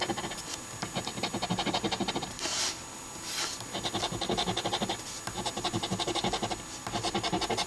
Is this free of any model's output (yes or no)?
yes